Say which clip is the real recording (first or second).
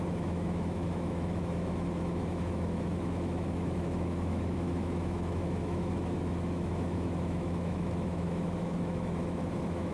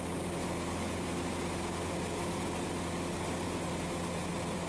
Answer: second